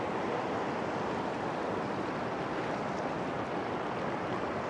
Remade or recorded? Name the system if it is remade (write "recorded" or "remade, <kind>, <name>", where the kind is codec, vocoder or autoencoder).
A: recorded